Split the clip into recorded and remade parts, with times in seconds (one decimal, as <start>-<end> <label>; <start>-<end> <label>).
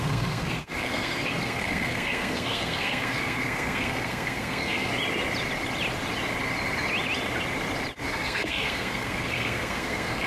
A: 0.0-4.9 remade; 4.9-8.1 recorded; 8.1-10.3 remade